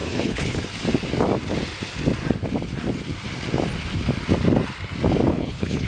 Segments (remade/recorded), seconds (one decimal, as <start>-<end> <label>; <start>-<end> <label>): 0.0-0.6 remade; 0.6-5.3 recorded; 5.3-5.9 remade